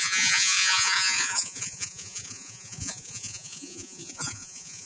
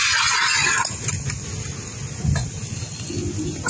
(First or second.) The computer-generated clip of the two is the first